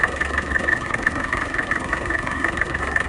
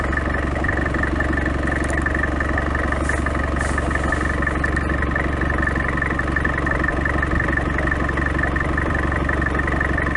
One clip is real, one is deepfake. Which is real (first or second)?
second